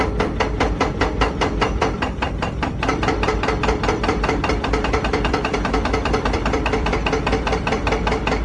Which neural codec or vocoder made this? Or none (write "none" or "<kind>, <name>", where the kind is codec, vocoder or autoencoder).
vocoder, BigVGAN v2